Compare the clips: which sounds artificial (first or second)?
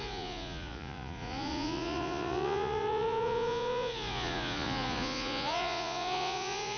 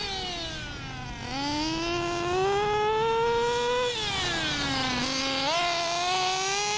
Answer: first